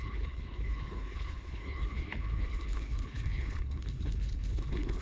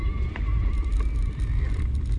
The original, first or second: second